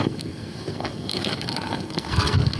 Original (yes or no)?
no